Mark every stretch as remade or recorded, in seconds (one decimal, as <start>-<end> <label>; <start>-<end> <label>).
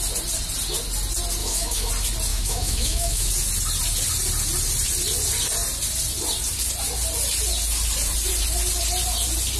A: 0.0-1.4 recorded; 1.4-1.9 remade; 1.9-2.3 recorded; 2.3-3.3 remade; 3.3-9.6 recorded